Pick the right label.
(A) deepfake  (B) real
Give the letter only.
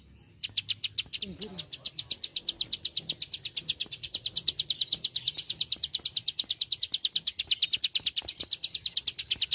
B